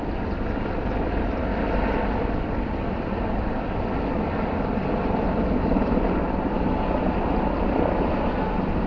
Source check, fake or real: real